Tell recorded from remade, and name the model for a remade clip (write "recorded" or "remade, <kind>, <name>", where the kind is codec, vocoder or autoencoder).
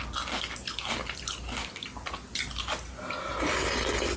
recorded